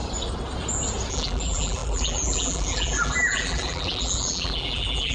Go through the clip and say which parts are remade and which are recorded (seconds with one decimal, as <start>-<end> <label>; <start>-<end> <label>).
0.0-1.1 recorded; 1.1-5.1 remade